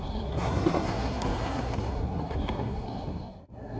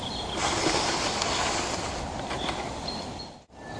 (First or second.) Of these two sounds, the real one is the second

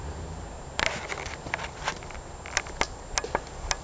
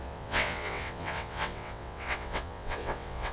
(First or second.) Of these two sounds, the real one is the first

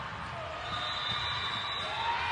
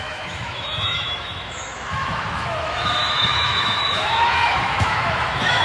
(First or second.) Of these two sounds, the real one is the first